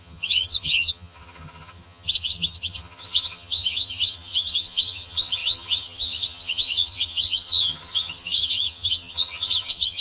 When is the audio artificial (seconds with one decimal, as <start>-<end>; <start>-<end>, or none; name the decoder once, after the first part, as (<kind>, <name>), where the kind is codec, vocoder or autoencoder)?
0.0-10.0 (vocoder, HiFi-GAN)